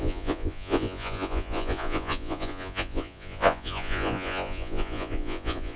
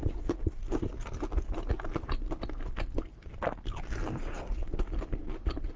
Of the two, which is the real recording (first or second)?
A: second